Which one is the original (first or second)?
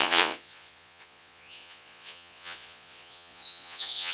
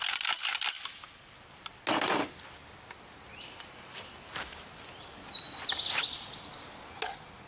second